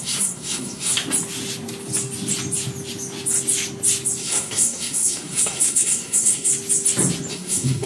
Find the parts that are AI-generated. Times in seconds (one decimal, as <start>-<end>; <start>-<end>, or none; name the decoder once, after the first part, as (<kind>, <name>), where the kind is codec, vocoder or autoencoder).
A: 0.0-0.9 (codec, SNAC); 4.2-6.5; 7.3-7.9